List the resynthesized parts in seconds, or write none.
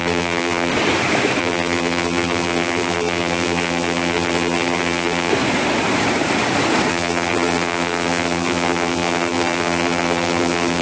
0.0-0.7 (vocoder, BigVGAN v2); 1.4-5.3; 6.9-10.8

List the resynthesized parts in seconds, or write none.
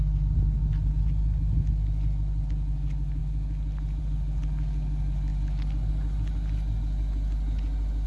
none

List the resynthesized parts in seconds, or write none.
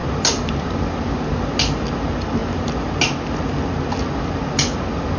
none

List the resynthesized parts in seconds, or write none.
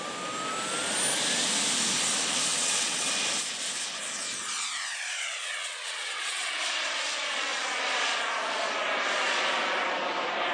2.5-3.1 (vocoder, WaveNeXt); 5.4-6.6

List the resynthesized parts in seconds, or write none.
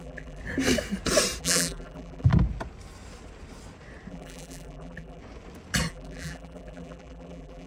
0.0-0.4 (vocoder, BigVGAN v2); 1.4-2.3; 4.1-5.2; 5.9-7.7